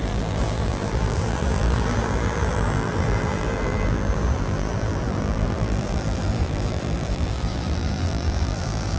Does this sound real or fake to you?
fake